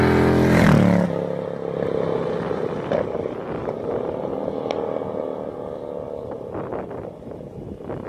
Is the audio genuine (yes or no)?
yes